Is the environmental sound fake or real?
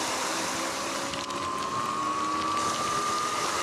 real